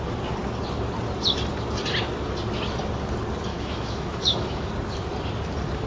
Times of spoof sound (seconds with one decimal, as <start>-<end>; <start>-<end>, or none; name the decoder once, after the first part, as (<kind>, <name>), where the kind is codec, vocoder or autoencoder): 3.5-4.7 (autoencoder, DAC-VAE)